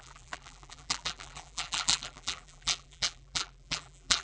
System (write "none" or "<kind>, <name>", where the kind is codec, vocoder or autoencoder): vocoder, BigVGAN v2